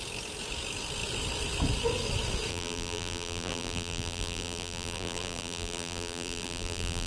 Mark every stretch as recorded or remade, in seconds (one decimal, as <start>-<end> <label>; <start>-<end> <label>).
0.0-2.5 recorded; 2.5-7.1 remade